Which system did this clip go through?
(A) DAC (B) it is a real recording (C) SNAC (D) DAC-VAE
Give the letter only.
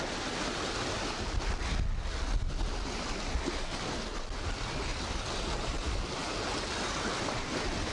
B